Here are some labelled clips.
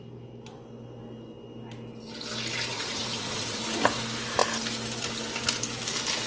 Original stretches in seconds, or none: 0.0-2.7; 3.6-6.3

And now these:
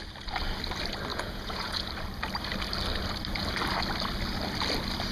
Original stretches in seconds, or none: 0.0-1.1; 1.9-5.1

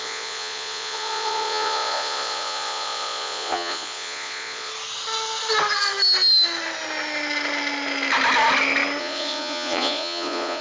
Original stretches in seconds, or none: 4.7-9.0

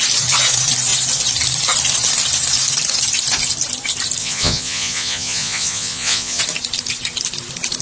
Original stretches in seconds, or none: 0.0-4.2; 6.4-7.8